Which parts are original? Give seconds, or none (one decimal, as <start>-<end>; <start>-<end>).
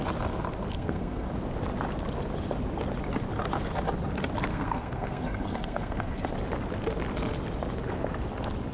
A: 0.0-0.7; 1.3-4.5; 6.3-8.7